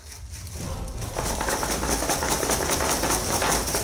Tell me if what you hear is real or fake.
real